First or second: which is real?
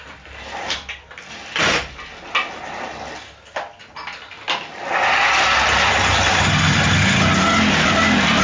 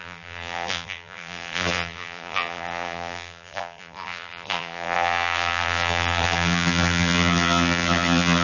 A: first